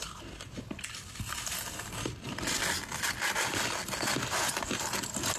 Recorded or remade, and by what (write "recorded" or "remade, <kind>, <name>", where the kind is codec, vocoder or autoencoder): remade, vocoder, BigVGAN v2